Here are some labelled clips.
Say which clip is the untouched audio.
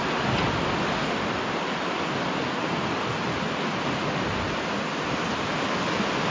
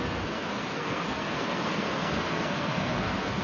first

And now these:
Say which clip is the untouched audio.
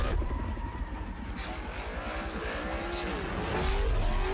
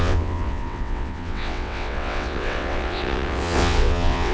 first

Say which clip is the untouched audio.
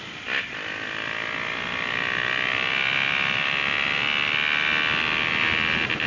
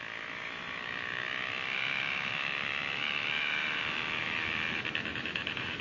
first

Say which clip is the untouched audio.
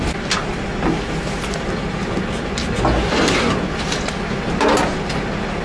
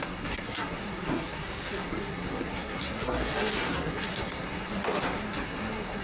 first